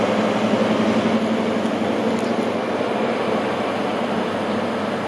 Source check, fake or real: real